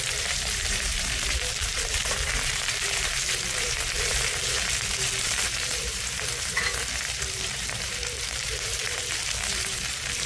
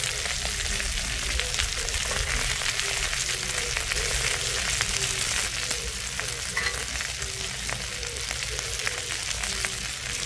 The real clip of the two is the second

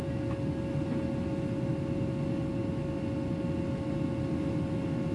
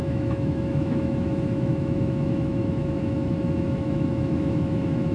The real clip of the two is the first